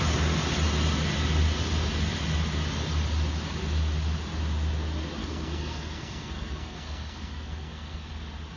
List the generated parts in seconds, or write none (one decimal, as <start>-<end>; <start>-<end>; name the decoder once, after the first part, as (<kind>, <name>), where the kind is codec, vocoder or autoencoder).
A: 5.2-8.1 (codec, SNAC)

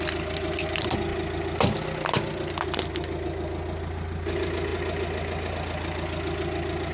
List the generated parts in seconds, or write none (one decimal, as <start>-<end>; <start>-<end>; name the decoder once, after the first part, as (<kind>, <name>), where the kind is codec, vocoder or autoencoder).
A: none

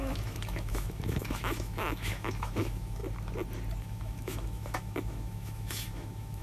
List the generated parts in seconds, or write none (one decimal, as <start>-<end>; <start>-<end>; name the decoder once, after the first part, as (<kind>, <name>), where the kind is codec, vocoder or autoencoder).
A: 0.0-3.0 (autoencoder, DAC-VAE); 3.8-6.4

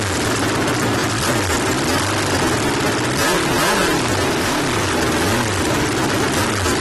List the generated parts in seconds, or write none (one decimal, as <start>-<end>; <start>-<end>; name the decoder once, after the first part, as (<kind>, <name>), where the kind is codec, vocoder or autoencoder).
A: none

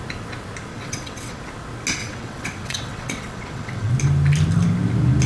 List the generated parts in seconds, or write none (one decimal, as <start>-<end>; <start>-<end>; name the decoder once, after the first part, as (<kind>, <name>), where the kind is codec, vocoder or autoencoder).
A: 0.7-1.4 (vocoder, WaveNeXt); 2.0-3.9

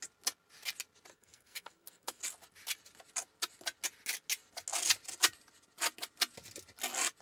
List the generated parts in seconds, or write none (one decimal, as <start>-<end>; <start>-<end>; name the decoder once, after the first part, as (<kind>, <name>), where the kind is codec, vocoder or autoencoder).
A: 1.1-2.2 (codec, SNAC)